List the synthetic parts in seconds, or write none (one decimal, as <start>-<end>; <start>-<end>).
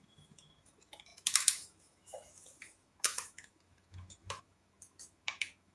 0.0-5.7